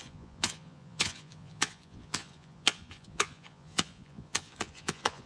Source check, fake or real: fake